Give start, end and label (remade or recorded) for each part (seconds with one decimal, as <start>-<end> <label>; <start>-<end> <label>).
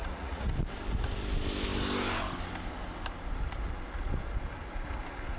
0.0-0.5 remade; 0.5-5.4 recorded